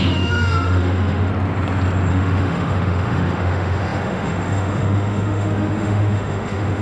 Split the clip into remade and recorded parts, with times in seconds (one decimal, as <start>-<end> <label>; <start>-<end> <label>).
0.0-1.3 remade; 1.3-2.1 recorded; 2.1-6.8 remade